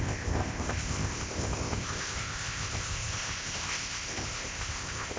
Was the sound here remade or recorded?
remade